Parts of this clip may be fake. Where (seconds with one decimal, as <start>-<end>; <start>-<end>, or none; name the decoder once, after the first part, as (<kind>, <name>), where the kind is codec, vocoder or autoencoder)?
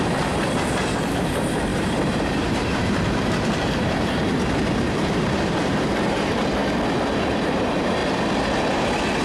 0.0-6.6 (vocoder, BigVGAN v2); 7.3-8.0